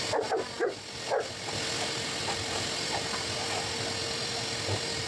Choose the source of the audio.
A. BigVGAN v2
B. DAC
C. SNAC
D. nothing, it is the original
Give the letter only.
D